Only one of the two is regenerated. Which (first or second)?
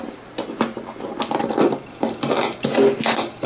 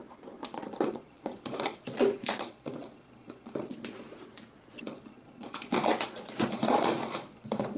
second